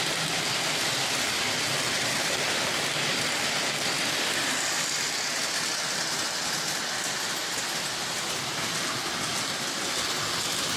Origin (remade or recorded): recorded